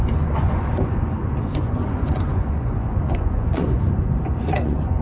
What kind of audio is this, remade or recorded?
remade